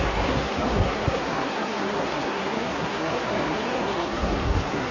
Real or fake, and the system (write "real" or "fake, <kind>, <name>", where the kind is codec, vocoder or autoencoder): fake, codec, SNAC